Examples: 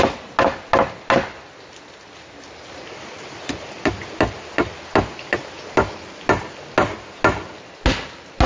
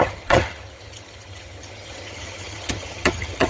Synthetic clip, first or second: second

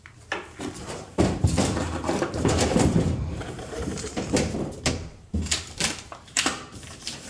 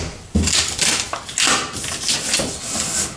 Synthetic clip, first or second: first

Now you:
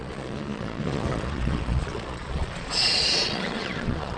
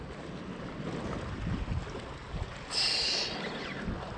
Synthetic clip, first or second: first